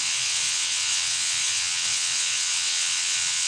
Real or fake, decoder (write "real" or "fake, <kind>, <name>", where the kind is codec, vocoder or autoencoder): fake, vocoder, WaveNeXt